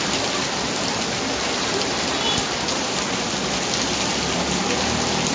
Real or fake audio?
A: real